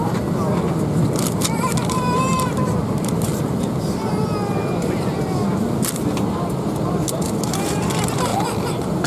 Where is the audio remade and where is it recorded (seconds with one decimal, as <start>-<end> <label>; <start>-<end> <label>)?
0.0-9.1 recorded